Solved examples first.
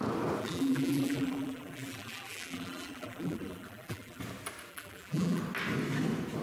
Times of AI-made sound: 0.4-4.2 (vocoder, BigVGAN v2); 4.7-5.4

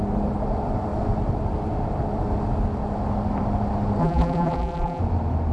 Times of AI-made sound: 4.0-5.0 (vocoder, BigVGAN v2)

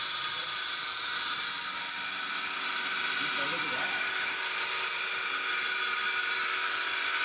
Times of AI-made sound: 1.1-5.2 (vocoder, BigVGAN v2)

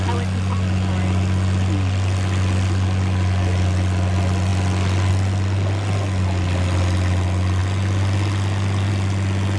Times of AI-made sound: none

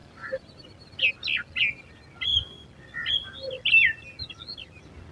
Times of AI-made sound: none

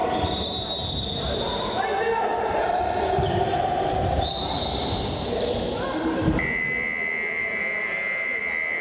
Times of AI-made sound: 0.0-1.7 (vocoder, BigVGAN v2); 2.3-4.0; 7.4-8.4